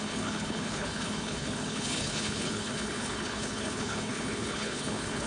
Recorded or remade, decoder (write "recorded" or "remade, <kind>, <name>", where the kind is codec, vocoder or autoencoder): remade, codec, HILCodec